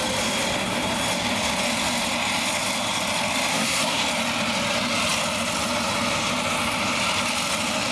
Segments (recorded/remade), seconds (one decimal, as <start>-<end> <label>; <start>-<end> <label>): 0.0-3.5 recorded; 3.5-4.0 remade; 4.0-7.9 recorded

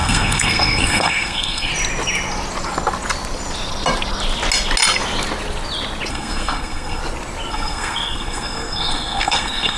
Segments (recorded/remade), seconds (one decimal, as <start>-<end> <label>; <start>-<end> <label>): 0.0-1.7 remade; 1.7-6.1 recorded; 6.1-7.0 remade; 7.0-7.5 recorded; 7.5-9.8 remade